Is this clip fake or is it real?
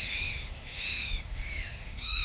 fake